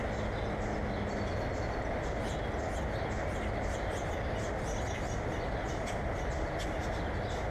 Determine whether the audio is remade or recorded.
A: recorded